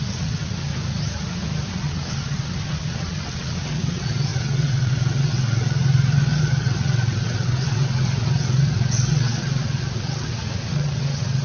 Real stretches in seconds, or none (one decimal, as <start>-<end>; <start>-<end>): 0.7-1.7